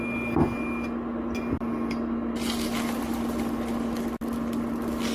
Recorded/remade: recorded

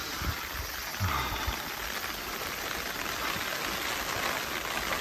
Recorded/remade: recorded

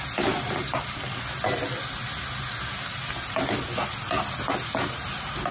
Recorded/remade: recorded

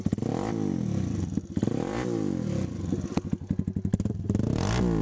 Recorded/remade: recorded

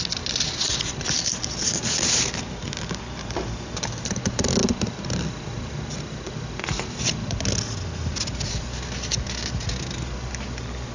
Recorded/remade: recorded